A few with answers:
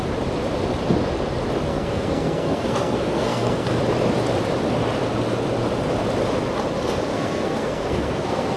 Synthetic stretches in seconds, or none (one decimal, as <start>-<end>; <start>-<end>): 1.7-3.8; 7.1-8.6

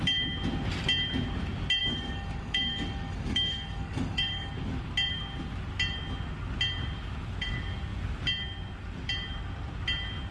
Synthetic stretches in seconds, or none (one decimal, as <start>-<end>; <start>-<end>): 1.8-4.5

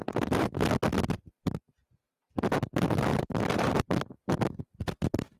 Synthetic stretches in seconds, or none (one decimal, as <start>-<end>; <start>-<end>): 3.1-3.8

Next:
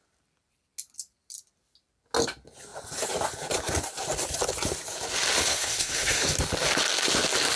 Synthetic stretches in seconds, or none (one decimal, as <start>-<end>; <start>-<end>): 5.5-6.3

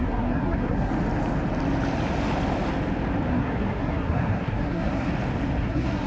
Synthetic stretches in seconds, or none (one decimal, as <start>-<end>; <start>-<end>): 0.0-0.9; 3.3-5.1; 5.6-6.1